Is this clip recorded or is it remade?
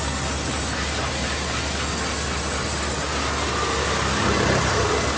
recorded